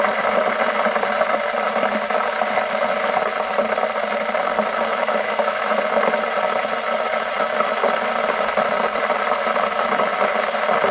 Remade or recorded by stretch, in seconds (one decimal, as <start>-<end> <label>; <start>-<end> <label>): 0.0-5.0 recorded; 5.0-5.8 remade; 5.8-10.9 recorded